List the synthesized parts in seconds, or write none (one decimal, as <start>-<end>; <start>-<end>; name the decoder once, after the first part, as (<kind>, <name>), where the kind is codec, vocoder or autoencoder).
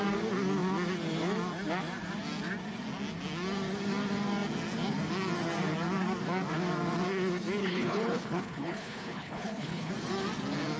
7.6-9.9 (codec, HILCodec)